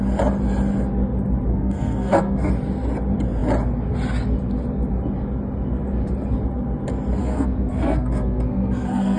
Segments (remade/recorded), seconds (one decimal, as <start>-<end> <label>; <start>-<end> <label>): 0.0-1.5 recorded; 1.5-2.5 remade; 2.5-7.2 recorded; 7.2-9.2 remade